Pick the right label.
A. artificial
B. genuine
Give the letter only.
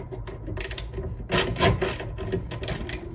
B